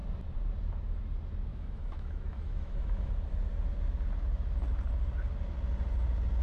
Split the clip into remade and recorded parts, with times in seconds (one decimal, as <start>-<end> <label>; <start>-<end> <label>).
0.0-1.5 recorded; 1.5-3.1 remade; 3.1-6.4 recorded